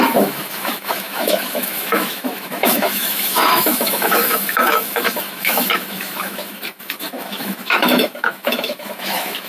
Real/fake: fake